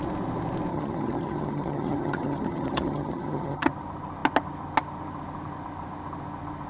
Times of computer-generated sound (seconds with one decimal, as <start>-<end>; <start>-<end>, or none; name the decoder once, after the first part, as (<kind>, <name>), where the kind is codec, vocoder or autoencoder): 0.7-3.7 (vocoder, HiFi-GAN)